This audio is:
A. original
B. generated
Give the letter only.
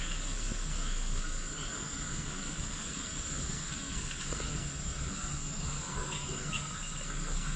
B